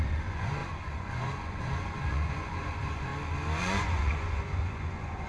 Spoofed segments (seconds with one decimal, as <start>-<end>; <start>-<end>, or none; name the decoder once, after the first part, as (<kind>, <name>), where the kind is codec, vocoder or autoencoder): 0.0-3.1 (vocoder, Vocos); 3.6-5.3

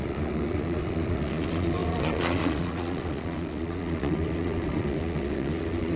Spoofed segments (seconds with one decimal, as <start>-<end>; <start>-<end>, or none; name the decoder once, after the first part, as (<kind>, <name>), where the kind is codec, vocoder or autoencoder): 0.0-6.0 (vocoder, Vocos)

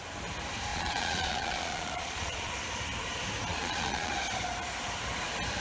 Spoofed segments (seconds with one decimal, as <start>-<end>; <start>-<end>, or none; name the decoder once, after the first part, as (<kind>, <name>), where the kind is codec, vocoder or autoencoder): 0.7-2.5 (vocoder, Vocos); 3.5-4.1

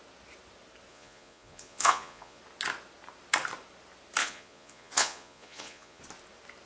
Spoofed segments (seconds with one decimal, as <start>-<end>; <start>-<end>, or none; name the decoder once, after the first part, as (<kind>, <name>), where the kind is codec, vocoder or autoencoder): 0.9-2.4 (vocoder, Vocos); 4.2-6.0

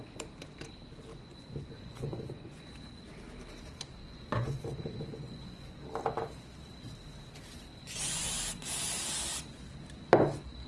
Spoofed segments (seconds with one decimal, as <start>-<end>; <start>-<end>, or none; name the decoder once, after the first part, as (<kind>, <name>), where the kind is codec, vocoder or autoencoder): 1.1-2.7 (vocoder, Vocos); 4.0-5.8; 7.7-8.3